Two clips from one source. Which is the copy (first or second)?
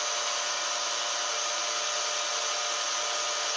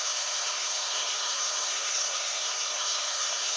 second